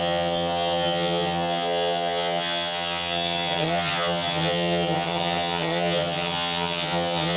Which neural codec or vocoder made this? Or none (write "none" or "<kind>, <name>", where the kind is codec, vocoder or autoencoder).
vocoder, HiFi-GAN